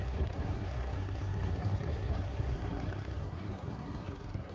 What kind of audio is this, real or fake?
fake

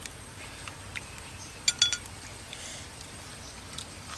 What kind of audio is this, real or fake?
real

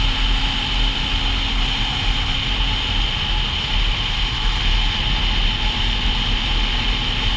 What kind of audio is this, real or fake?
real